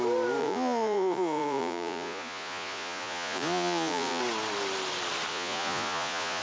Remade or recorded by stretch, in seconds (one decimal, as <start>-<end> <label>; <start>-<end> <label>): 0.0-0.4 recorded; 0.4-4.2 remade; 4.2-5.3 recorded; 5.3-6.4 remade